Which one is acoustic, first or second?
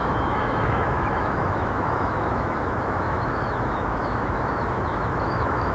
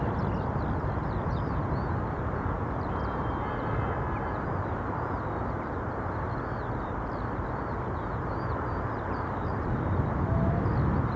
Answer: second